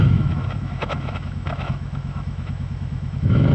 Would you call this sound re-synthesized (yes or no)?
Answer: yes